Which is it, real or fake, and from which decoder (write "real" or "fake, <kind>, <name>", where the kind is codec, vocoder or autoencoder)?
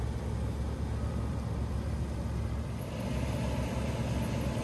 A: real